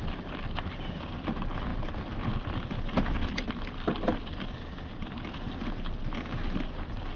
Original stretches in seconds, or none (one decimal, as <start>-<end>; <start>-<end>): 0.0-7.2